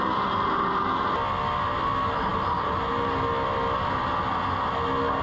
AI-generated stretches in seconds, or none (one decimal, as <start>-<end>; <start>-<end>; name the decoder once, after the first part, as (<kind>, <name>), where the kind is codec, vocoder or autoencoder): none